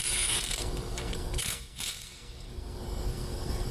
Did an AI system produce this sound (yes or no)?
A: yes